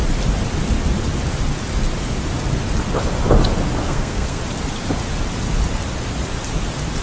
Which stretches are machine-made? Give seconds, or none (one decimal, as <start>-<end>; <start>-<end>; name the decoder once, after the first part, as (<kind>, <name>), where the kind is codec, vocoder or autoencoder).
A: 3.8-4.4 (codec, SNAC)